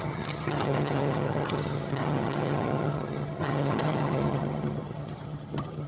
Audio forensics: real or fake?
fake